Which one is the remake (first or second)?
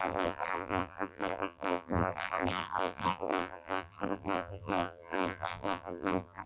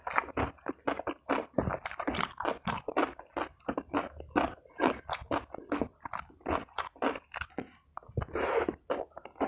first